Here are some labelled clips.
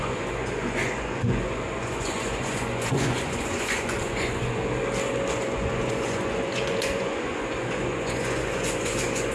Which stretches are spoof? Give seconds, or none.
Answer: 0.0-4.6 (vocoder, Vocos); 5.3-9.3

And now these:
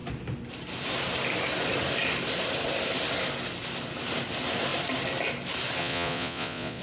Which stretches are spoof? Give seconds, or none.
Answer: 5.8-6.8 (vocoder, Vocos)

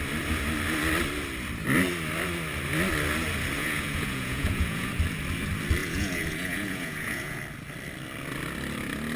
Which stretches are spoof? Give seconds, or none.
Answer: 3.6-4.9 (vocoder, Vocos); 5.8-7.4

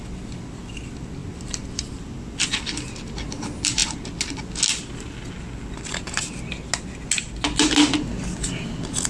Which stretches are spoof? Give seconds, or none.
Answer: none